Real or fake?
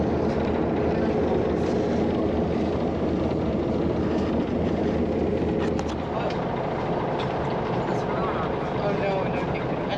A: real